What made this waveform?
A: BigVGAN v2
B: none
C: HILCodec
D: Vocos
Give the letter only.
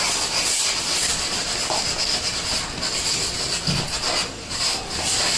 B